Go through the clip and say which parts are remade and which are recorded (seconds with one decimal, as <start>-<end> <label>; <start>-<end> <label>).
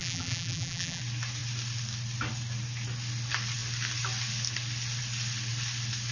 0.0-1.0 remade; 1.0-6.1 recorded